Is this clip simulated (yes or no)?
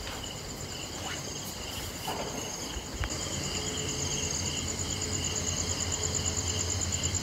no